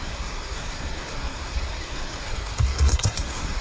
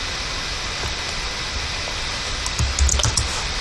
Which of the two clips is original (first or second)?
second